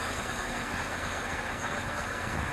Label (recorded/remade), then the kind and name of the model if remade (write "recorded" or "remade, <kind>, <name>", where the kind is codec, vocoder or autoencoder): remade, codec, SNAC